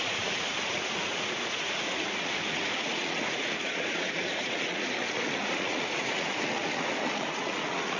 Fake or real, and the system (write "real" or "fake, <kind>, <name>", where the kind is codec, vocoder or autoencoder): fake, vocoder, Vocos